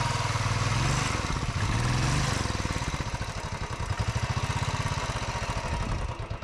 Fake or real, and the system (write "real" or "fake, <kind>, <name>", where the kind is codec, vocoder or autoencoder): real